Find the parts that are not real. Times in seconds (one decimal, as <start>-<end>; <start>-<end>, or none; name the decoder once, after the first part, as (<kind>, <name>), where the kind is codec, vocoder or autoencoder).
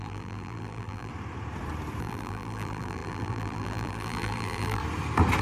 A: 0.0-1.1 (vocoder, BigVGAN v2); 2.0-4.8